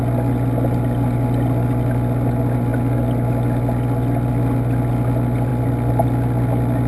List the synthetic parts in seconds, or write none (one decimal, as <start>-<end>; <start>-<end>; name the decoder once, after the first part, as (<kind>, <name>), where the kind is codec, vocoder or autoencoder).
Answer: none